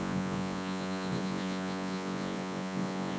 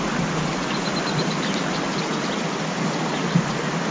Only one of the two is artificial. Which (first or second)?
first